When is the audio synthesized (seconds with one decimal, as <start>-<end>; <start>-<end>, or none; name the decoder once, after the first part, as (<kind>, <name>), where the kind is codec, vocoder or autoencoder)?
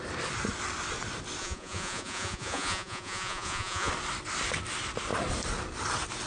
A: 1.4-3.9 (vocoder, Vocos)